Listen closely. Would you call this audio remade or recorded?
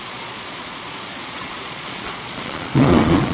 remade